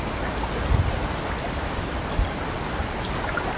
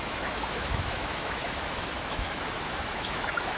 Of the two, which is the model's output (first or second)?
second